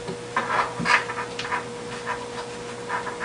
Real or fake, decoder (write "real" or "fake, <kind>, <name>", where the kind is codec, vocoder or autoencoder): real